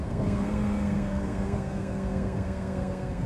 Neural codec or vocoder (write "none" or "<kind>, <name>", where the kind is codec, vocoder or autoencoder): codec, SNAC